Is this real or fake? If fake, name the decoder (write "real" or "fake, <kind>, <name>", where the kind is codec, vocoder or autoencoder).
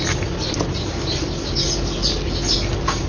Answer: real